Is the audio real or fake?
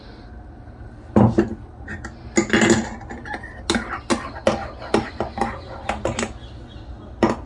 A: real